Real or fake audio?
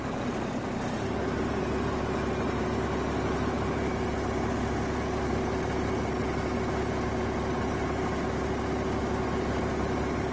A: real